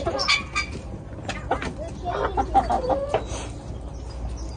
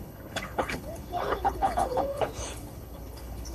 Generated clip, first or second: second